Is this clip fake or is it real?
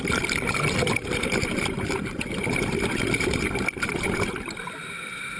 fake